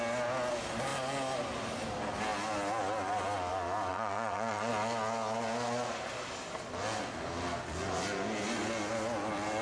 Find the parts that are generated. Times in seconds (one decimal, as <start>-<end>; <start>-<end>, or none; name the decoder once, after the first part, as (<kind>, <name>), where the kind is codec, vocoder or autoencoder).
3.9-4.7 (vocoder, Vocos)